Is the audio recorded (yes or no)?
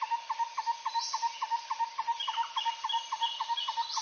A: yes